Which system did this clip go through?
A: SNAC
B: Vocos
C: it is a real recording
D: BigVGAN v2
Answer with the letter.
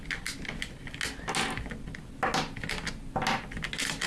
C